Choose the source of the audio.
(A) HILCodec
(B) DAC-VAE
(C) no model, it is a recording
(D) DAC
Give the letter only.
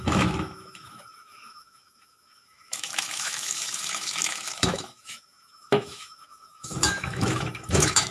B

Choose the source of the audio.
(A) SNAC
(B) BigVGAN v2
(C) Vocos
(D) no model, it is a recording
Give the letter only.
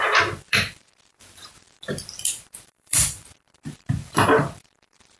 B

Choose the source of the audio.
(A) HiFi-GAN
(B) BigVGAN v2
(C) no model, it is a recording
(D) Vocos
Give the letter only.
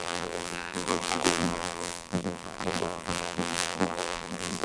B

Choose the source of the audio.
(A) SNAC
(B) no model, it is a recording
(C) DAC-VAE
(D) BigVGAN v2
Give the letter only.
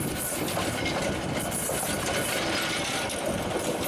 B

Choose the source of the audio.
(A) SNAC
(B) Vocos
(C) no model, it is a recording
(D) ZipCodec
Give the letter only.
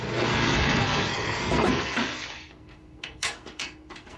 A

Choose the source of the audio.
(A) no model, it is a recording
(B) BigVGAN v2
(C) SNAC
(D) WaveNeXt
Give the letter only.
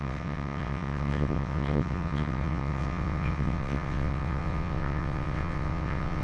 D